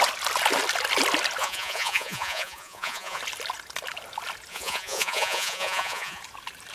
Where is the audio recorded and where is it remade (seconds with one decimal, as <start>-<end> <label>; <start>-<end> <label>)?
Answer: 0.0-1.4 recorded; 1.4-3.2 remade; 3.2-4.5 recorded; 4.5-6.2 remade; 6.2-6.7 recorded

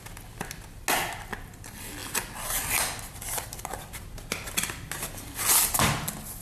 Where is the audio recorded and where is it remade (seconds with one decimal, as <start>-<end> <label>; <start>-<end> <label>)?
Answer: 0.0-6.4 recorded

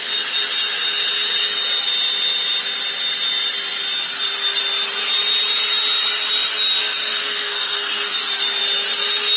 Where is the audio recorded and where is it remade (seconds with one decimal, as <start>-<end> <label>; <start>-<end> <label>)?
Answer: 0.0-6.8 recorded; 6.8-8.1 remade; 8.1-9.4 recorded